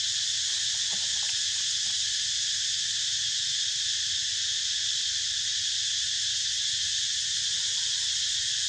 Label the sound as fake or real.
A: real